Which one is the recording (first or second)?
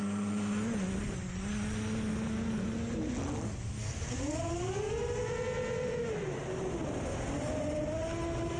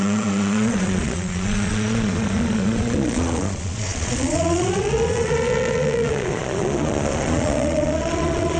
first